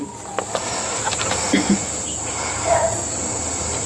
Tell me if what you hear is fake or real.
real